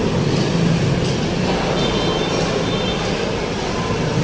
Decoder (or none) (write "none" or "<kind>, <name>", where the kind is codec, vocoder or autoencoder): none